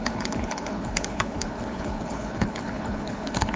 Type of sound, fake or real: fake